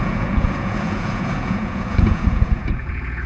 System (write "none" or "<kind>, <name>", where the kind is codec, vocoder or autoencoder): vocoder, Vocos